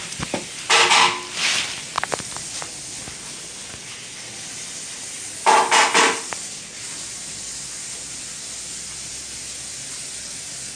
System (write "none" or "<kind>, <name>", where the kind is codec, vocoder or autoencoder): none